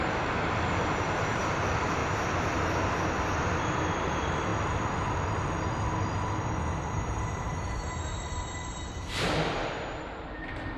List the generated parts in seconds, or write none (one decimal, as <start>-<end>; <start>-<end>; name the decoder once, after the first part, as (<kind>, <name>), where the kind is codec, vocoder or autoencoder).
0.0-2.0 (vocoder, BigVGAN v2); 3.8-4.5; 6.9-9.6; 10.3-10.8